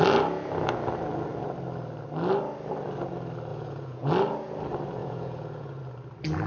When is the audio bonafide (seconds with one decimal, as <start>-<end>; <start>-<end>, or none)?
0.0-3.5; 4.1-5.0; 5.8-6.5